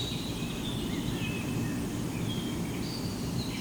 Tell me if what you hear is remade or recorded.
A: recorded